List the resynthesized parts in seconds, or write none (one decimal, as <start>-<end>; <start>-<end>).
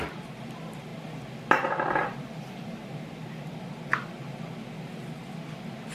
0.9-3.5; 3.9-4.5